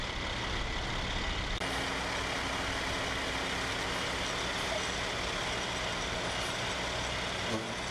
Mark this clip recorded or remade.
recorded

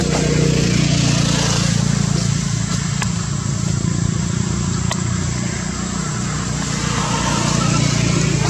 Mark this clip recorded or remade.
recorded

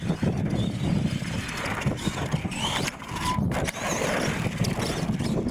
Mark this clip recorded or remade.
remade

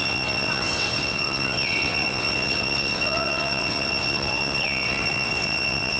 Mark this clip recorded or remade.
remade